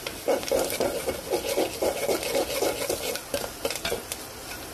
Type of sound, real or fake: real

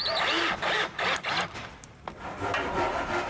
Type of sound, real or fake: real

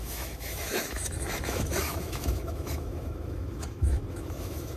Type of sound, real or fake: fake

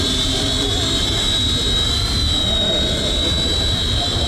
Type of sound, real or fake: real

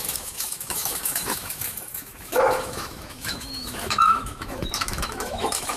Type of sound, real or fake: fake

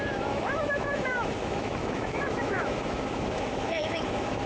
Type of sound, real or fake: fake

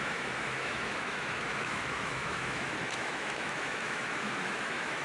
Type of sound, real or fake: fake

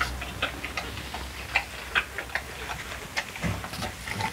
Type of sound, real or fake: real